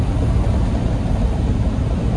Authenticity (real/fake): real